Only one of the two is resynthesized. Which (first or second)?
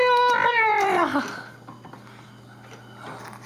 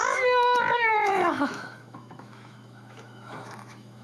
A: second